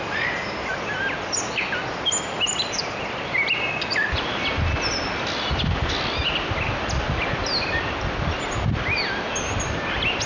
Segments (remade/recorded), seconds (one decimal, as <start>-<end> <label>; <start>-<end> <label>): 0.0-10.3 recorded